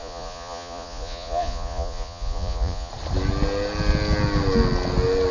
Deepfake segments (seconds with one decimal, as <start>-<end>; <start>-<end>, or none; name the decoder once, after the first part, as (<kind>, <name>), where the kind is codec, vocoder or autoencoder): 0.0-2.9 (vocoder, Vocos)